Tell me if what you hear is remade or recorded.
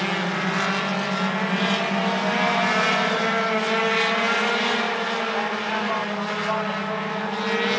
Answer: recorded